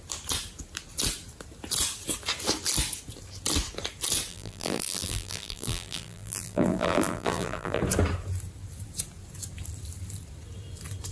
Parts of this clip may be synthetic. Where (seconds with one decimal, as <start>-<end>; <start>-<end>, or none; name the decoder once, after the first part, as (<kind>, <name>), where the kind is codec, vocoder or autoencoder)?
4.3-7.8 (vocoder, BigVGAN v2)